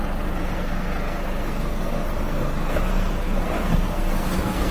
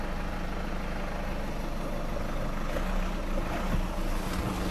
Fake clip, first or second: first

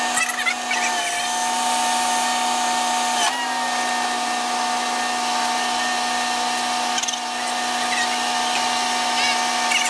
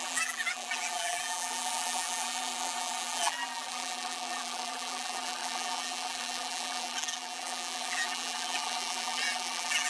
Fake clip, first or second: second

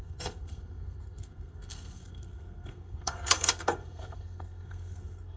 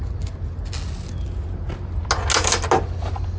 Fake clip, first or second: first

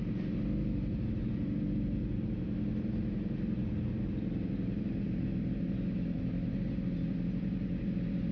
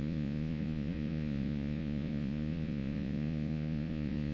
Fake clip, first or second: second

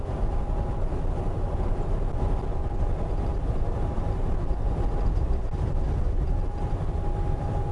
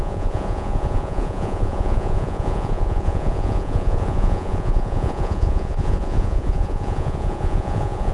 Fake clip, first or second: second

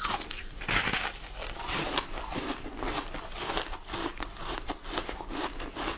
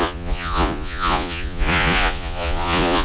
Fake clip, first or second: second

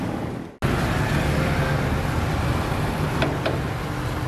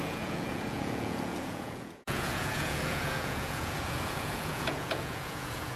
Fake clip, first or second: second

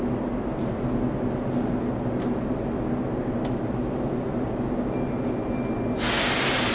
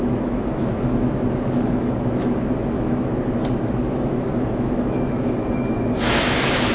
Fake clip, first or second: second